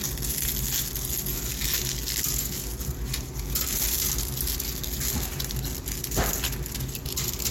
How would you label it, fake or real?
real